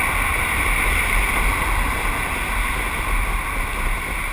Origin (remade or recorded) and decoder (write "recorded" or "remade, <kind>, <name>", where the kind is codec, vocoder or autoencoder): recorded